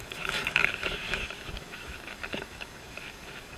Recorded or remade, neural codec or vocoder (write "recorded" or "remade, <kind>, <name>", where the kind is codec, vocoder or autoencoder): remade, codec, DAC